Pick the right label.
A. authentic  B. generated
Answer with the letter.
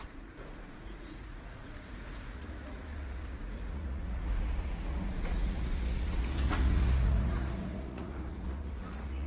B